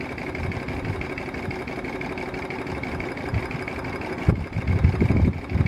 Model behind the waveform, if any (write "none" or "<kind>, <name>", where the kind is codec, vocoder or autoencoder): none